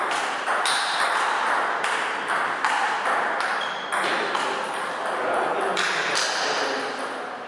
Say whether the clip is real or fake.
real